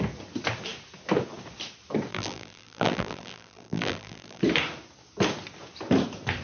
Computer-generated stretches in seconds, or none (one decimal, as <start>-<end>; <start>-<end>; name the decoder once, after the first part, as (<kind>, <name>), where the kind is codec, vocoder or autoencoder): 2.1-4.4 (vocoder, BigVGAN v2)